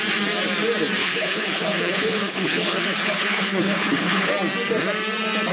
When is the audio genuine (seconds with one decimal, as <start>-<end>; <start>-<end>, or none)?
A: 0.0-1.0; 4.3-5.5